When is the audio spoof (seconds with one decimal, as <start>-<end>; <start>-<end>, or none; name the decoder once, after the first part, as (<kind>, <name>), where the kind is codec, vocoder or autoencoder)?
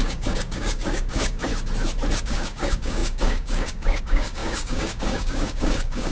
0.0-1.5 (codec, DAC); 2.2-6.1